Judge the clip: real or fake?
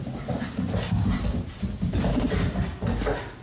real